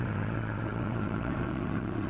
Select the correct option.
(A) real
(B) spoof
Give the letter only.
B